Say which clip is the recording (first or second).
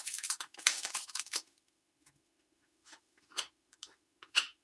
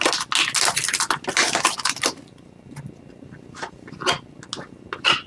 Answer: second